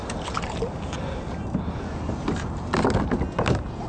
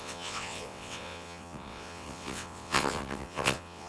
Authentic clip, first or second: first